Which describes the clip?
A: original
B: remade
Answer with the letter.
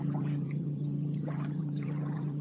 B